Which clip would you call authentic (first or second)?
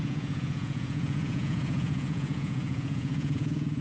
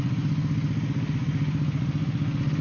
second